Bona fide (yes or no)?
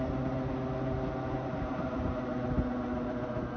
yes